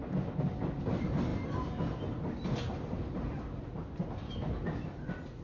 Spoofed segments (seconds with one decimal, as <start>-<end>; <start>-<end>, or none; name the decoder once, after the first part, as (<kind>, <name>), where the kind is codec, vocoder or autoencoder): none